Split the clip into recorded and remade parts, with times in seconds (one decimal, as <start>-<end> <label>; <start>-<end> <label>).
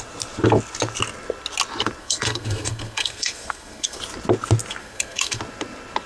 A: 0.0-2.0 recorded; 2.0-4.0 remade; 4.0-4.8 recorded; 4.8-5.4 remade; 5.4-6.1 recorded